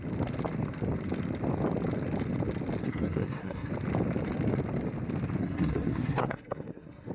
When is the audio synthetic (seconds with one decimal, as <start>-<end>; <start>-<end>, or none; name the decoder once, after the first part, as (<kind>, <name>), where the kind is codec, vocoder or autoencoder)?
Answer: 2.8-3.7 (codec, SNAC); 5.4-7.1